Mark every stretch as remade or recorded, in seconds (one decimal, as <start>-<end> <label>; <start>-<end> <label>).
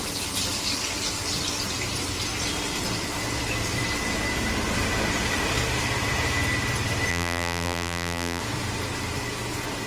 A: 0.0-7.1 recorded; 7.1-8.4 remade; 8.4-9.9 recorded